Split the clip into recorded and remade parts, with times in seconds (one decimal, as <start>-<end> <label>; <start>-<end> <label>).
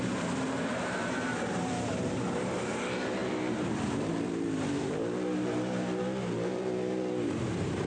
0.0-7.9 remade